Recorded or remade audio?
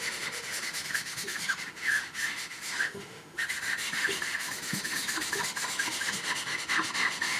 remade